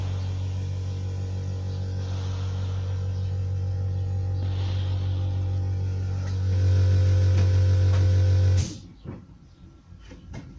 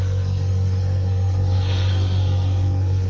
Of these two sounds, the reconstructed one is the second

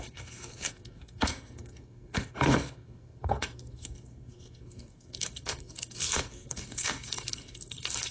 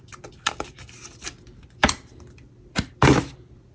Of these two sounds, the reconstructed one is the first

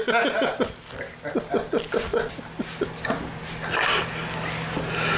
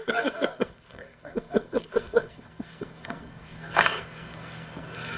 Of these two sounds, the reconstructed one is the second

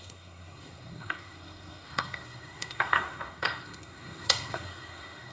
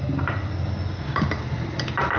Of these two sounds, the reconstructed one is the first